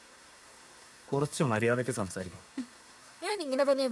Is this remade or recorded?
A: remade